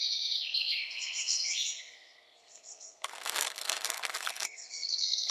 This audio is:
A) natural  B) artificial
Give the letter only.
B